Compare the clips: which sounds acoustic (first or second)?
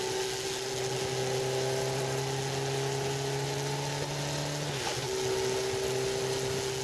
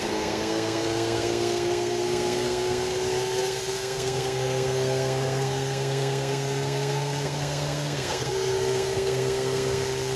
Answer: first